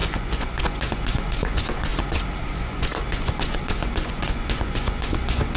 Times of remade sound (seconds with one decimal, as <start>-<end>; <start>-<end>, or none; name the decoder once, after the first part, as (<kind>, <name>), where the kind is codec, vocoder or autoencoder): 0.0-1.9 (vocoder, Vocos); 2.4-5.6